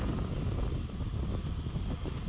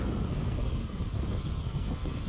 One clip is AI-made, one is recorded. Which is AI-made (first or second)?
second